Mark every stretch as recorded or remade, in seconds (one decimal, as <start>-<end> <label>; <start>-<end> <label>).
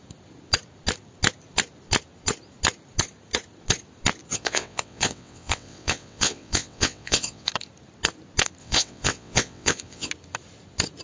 0.0-4.3 recorded; 4.3-7.5 remade; 7.5-8.6 recorded; 8.6-10.1 remade; 10.1-11.0 recorded